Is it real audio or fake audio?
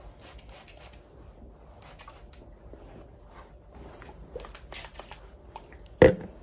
real